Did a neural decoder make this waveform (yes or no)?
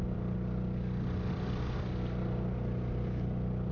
no